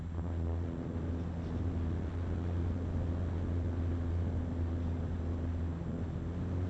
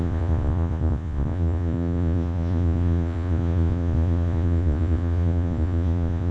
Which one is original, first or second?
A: first